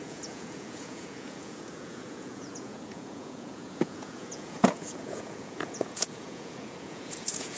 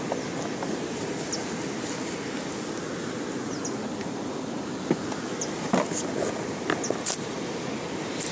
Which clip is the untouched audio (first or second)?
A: second